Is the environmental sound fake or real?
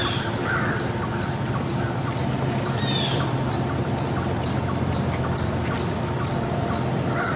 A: fake